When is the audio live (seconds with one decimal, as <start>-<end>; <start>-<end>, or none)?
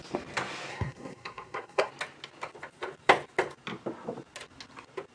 0.0-0.7; 1.9-5.1